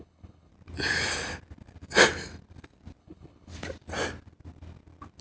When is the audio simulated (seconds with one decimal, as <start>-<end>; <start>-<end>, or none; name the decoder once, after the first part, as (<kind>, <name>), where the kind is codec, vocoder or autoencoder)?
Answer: 0.0-0.5 (codec, HILCodec); 3.0-3.5